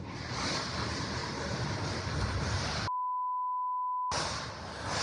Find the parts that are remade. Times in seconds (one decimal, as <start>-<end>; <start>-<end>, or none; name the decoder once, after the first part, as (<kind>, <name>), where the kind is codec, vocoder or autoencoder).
none